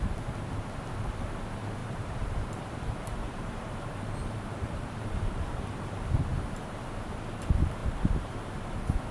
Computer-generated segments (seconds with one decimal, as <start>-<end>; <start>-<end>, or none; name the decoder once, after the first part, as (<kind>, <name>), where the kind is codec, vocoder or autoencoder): 1.8-6.0 (vocoder, BigVGAN v2); 7.8-8.6